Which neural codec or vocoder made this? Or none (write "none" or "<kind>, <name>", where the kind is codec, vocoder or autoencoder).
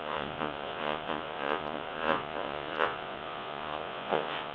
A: vocoder, Vocos